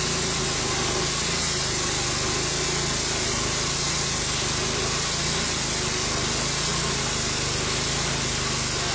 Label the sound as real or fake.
real